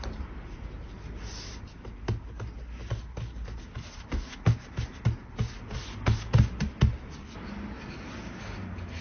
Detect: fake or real real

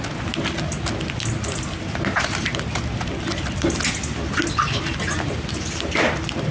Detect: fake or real real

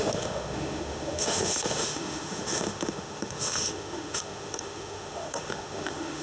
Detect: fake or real fake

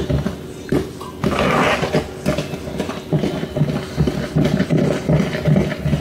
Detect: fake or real real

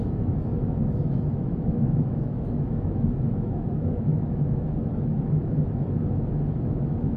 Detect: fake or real fake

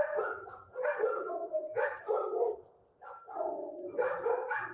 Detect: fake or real real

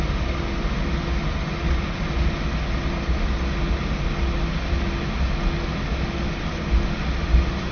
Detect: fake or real real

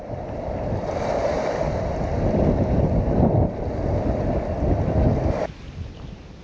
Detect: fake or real real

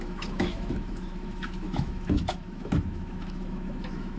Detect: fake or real fake